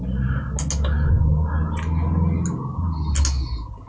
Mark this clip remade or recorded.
recorded